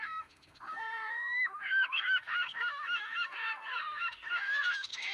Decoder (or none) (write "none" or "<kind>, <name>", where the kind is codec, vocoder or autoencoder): autoencoder, DAC-VAE